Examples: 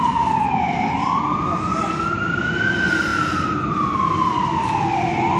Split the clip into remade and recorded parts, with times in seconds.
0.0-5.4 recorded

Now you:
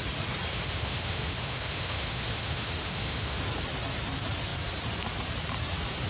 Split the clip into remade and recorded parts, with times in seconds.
0.0-0.5 recorded; 0.5-3.4 remade; 3.4-6.1 recorded

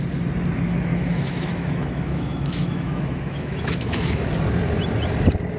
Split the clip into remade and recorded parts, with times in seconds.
0.0-0.9 recorded; 0.9-4.3 remade; 4.3-5.6 recorded

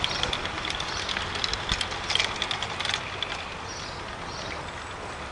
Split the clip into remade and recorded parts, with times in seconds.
0.0-5.3 recorded

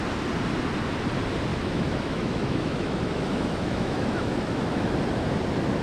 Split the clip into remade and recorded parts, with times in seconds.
0.0-1.5 recorded; 1.5-5.0 remade; 5.0-5.8 recorded